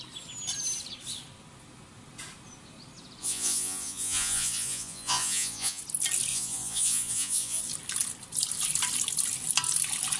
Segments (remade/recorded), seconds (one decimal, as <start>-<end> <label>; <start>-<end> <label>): 0.0-3.2 recorded; 3.2-5.8 remade; 5.8-6.3 recorded; 6.3-7.6 remade; 7.6-10.2 recorded